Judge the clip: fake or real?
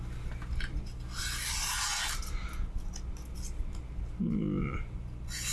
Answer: real